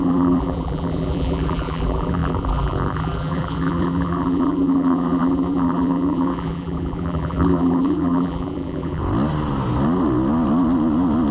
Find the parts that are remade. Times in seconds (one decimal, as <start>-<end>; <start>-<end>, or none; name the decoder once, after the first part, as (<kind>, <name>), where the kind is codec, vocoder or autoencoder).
0.0-9.0 (vocoder, BigVGAN v2)